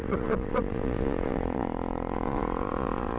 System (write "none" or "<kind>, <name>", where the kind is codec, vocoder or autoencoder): vocoder, Vocos